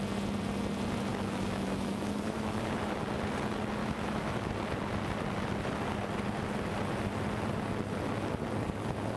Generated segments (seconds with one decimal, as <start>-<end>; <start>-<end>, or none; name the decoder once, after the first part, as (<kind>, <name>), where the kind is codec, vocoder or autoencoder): 1.1-2.8 (autoencoder, DAC-VAE); 3.8-4.5